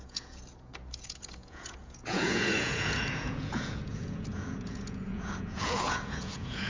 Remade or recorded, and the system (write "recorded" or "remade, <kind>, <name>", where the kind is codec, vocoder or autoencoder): remade, vocoder, Vocos